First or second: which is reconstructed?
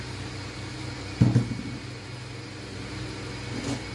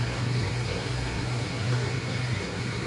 second